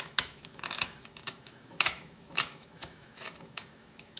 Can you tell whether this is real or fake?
fake